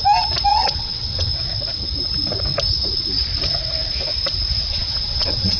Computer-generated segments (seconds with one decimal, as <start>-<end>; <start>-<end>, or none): 0.5-1.3; 4.7-5.6